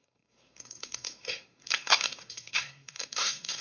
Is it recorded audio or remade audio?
remade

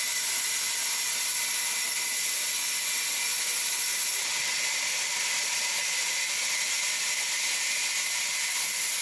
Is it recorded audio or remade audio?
recorded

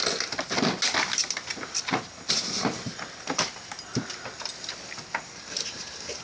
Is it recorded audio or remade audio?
recorded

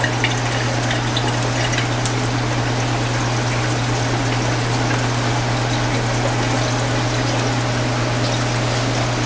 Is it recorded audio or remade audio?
recorded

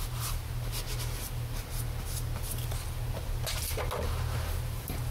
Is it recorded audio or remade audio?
recorded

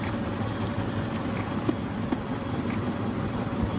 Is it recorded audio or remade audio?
remade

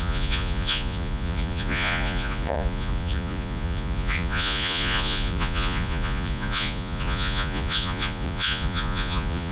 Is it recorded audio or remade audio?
remade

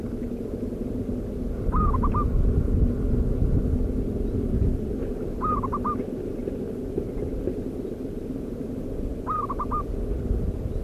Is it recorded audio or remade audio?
recorded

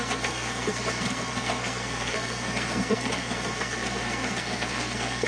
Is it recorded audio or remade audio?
remade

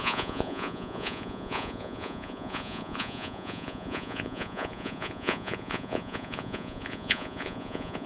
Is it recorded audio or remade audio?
remade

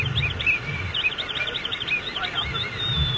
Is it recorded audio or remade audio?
recorded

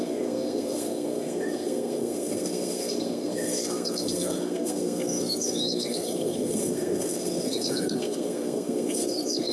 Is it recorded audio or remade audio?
remade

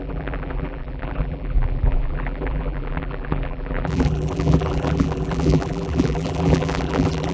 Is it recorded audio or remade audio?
remade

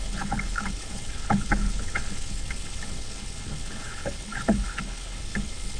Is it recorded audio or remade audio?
remade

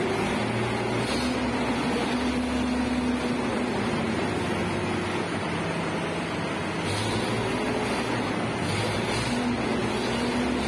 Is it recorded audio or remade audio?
recorded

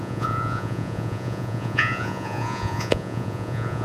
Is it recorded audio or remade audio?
remade